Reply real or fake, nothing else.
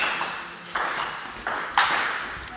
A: real